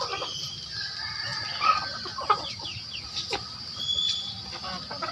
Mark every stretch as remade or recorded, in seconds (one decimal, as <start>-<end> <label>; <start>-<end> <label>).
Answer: 0.0-5.1 recorded